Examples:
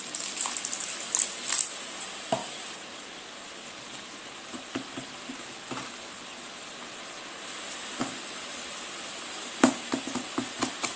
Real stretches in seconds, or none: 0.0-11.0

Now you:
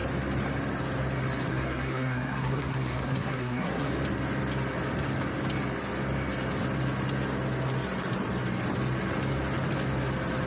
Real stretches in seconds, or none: 0.0-1.5; 3.9-10.5

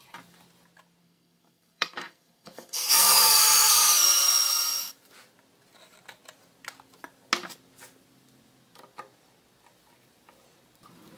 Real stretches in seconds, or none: 0.0-1.0; 4.9-11.2

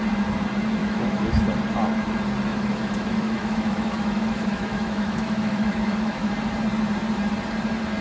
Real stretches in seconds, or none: 0.0-0.8; 1.4-2.5; 6.3-8.0

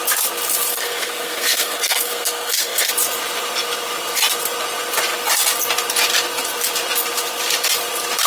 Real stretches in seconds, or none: 0.0-0.7; 2.9-8.3